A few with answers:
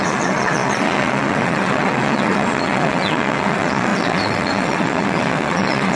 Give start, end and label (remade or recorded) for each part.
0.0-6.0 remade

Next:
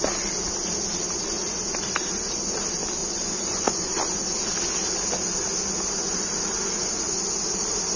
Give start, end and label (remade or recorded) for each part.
0.0-3.0 recorded; 3.0-3.9 remade; 3.9-8.0 recorded